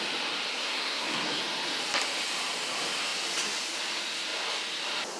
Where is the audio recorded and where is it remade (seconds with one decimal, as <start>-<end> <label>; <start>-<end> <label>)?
0.0-0.5 recorded; 0.5-1.4 remade; 1.4-5.2 recorded